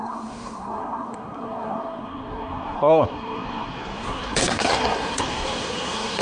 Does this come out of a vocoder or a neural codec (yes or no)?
yes